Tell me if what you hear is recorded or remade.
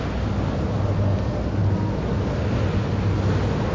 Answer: recorded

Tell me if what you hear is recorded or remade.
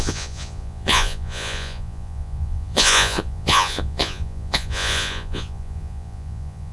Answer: remade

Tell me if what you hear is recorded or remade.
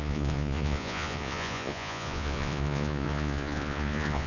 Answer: remade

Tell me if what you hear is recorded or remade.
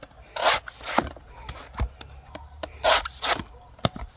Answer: recorded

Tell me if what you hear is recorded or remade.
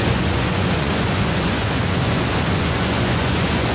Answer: remade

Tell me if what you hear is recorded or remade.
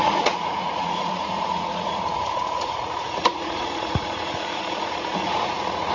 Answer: remade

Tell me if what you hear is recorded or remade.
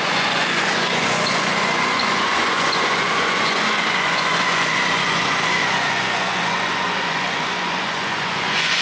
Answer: remade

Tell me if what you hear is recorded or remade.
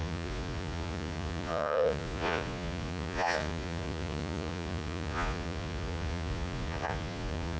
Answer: remade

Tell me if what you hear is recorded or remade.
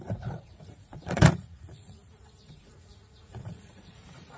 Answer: remade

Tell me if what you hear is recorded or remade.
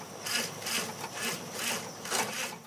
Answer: recorded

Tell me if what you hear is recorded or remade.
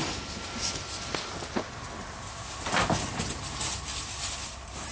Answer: recorded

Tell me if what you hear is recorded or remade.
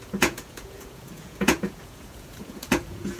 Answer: remade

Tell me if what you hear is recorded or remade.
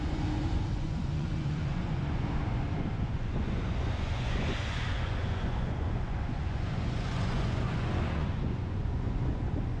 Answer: remade